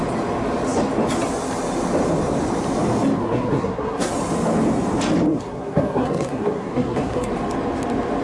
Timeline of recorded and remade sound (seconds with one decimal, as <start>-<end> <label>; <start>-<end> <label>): 0.0-3.2 recorded; 3.2-4.1 remade; 4.1-5.3 recorded; 5.3-7.3 remade; 7.3-8.2 recorded